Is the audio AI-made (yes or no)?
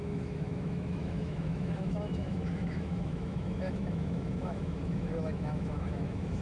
yes